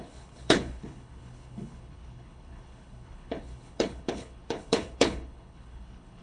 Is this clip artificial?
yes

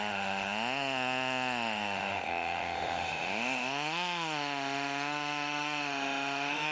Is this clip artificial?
yes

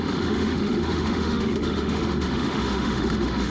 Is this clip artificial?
yes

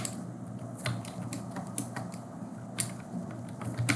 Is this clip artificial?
no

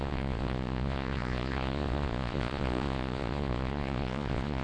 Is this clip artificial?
yes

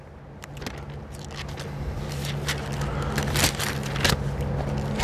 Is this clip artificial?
no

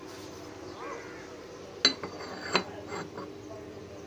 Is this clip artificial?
no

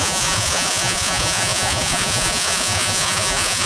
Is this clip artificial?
yes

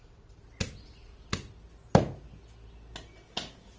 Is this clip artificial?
no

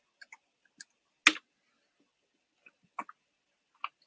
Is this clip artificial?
no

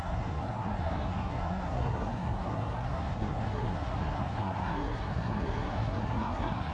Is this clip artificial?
yes